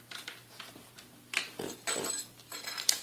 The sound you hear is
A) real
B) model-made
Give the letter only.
B